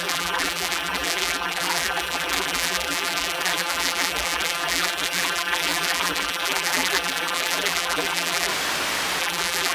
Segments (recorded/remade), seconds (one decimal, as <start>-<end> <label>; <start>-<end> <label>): 0.0-8.5 remade; 8.5-9.2 recorded; 9.2-9.7 remade